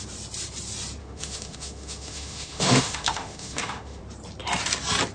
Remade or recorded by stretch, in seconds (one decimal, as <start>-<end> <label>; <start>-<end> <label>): 0.0-1.0 recorded; 1.0-4.0 remade; 4.0-5.1 recorded